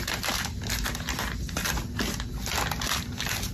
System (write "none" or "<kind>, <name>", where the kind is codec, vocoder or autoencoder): none